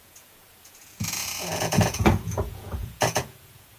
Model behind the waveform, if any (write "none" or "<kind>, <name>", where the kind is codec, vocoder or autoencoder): vocoder, Vocos